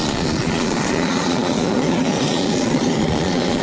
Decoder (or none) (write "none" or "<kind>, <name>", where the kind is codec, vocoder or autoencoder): vocoder, Vocos